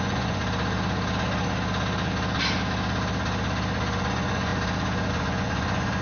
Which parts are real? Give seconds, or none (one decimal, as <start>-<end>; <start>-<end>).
0.4-4.0; 4.5-5.1

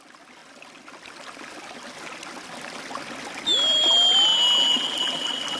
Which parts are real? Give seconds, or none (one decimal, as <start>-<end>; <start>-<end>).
0.0-5.6

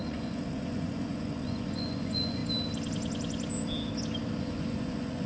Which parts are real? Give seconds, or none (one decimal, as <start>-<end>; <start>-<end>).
2.4-4.4

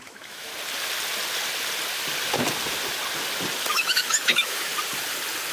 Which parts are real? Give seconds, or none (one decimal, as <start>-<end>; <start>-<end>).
0.5-3.7; 4.7-5.5